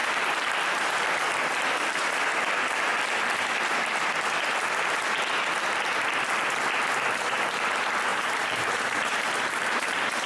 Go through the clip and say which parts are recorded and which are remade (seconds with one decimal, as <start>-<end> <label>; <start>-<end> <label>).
0.0-8.1 recorded; 8.1-10.3 remade